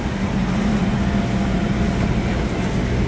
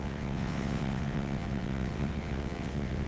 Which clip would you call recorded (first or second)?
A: first